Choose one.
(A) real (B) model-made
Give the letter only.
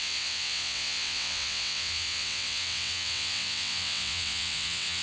B